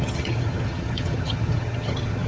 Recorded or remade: remade